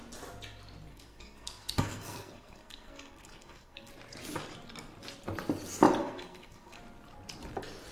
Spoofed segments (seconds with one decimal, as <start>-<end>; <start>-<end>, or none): 0.9-3.9; 6.0-6.8